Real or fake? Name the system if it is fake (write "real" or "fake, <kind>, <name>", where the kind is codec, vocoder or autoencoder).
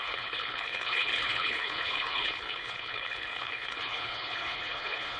fake, codec, HILCodec